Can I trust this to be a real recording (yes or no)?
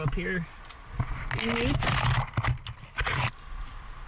yes